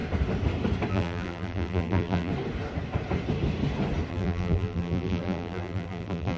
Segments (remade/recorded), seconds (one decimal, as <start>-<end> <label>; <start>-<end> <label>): 0.0-0.9 recorded; 0.9-2.3 remade; 2.3-4.1 recorded; 4.1-6.4 remade